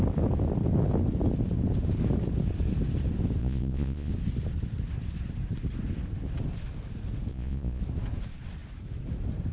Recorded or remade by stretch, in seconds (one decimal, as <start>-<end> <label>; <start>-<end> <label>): 0.0-3.4 recorded; 3.4-4.1 remade; 4.1-7.3 recorded; 7.3-7.8 remade; 7.8-9.5 recorded